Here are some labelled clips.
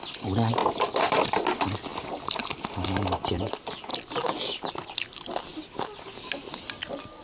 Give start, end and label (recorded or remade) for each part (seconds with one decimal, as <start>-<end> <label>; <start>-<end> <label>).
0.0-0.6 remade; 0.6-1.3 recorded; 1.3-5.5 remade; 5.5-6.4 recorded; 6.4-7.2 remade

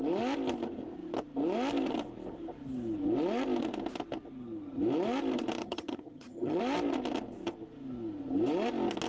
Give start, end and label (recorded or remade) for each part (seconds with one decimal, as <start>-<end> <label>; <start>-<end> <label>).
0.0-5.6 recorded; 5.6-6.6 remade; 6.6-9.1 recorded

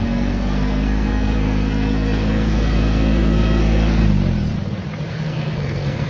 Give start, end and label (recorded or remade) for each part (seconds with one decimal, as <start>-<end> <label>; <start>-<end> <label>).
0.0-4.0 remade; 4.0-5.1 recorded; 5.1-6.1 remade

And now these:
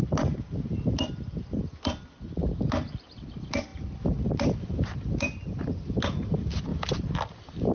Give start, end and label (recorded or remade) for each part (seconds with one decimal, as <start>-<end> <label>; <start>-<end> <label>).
0.0-7.7 recorded